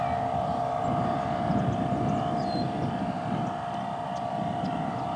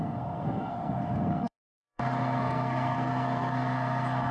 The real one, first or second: first